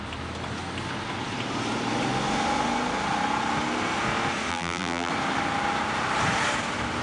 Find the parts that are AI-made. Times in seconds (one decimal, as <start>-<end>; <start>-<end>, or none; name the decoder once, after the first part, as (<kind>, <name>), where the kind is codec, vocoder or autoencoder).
4.5-5.1 (vocoder, BigVGAN v2)